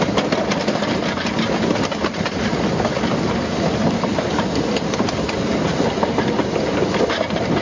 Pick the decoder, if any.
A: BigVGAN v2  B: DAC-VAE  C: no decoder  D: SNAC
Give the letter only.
C